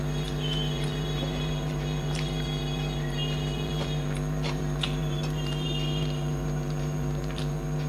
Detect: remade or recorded remade